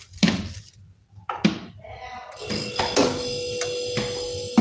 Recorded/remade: recorded